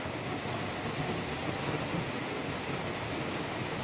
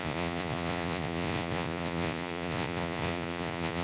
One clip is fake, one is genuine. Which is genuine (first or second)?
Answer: first